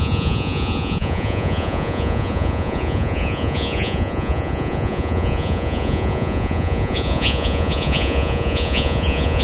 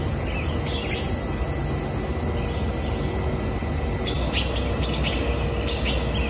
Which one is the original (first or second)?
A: second